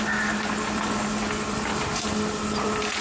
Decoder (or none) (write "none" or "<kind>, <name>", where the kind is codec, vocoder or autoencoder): none